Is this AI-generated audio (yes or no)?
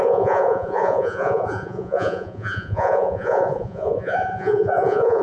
yes